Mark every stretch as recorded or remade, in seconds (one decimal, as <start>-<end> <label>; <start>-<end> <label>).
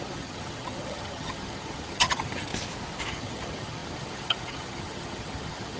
0.0-2.5 remade; 2.5-3.1 recorded; 3.1-5.8 remade